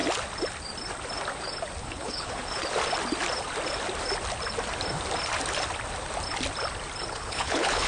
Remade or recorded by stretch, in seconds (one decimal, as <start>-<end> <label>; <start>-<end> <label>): 0.0-1.8 recorded; 1.8-2.6 remade; 2.6-7.1 recorded; 7.1-7.9 remade